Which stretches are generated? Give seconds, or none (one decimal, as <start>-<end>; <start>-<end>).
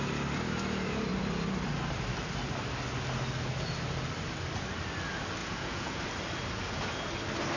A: 5.4-6.0